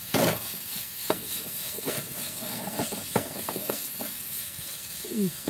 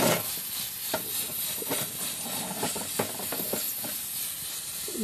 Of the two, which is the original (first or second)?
second